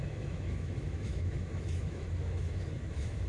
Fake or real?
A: fake